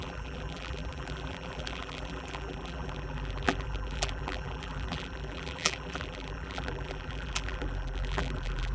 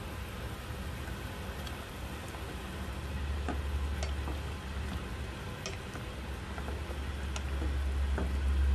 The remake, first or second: first